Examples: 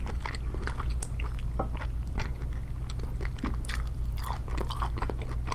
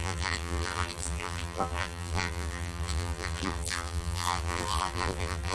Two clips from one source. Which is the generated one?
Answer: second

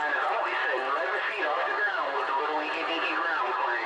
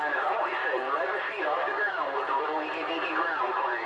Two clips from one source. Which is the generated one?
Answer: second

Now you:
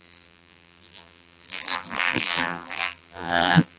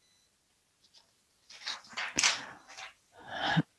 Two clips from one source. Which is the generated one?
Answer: first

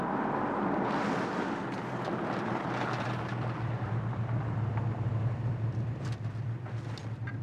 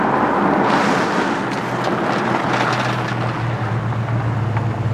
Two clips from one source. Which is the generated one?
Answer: first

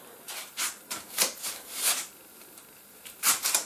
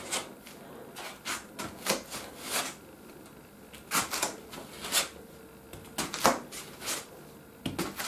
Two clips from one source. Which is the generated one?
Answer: first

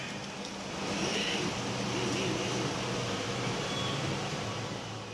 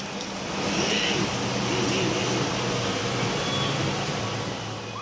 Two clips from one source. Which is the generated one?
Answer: first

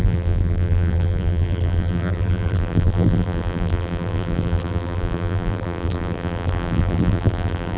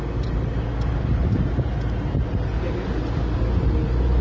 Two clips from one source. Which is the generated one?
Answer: first